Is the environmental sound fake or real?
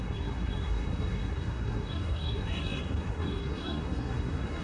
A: fake